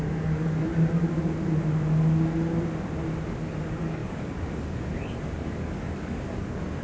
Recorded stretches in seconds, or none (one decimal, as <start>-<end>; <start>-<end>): 0.7-3.6